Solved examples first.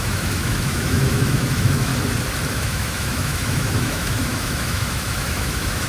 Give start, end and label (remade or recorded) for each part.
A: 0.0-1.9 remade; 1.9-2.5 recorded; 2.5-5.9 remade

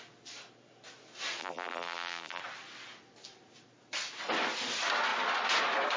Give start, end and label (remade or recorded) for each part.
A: 0.0-1.4 recorded; 1.4-2.4 remade; 2.4-6.0 recorded

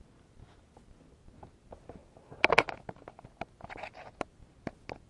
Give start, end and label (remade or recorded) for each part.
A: 0.0-5.1 recorded

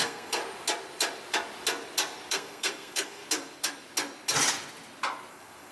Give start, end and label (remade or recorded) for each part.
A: 0.0-0.4 remade; 0.4-2.3 recorded; 2.3-3.2 remade; 3.2-5.3 recorded; 5.3-5.7 remade

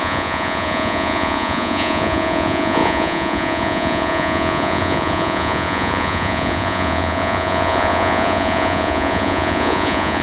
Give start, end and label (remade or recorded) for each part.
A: 0.0-10.2 remade

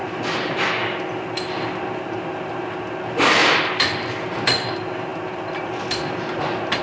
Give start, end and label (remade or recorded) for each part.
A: 0.0-6.8 recorded